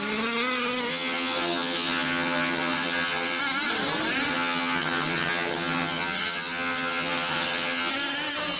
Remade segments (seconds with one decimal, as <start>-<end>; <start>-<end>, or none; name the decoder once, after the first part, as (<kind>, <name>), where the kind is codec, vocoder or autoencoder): 0.9-3.4 (vocoder, HiFi-GAN); 4.3-7.9